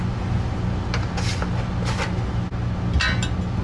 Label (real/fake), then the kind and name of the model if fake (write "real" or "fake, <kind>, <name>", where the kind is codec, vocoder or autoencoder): real